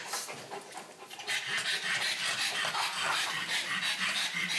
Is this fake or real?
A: real